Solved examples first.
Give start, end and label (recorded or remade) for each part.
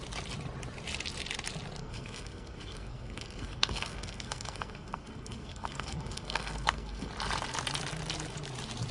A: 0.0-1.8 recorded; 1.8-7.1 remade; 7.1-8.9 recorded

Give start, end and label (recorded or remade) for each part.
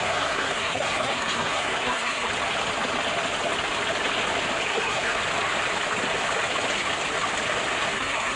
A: 0.0-2.3 remade; 2.3-4.7 recorded; 4.7-5.2 remade; 5.2-7.9 recorded; 7.9-8.4 remade